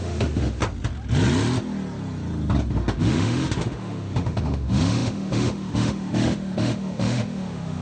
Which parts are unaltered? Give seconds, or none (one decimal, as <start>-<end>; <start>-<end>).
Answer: 0.6-2.7